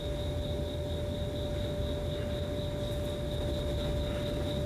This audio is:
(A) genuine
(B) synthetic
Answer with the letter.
A